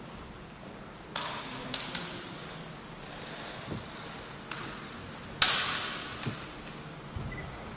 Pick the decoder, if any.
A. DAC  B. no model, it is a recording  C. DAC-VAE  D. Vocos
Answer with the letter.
B